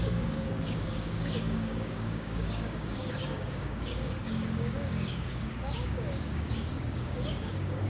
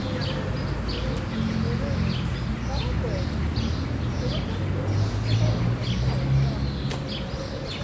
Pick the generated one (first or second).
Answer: first